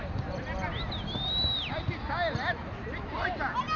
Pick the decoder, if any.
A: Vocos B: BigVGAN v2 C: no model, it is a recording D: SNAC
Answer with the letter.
C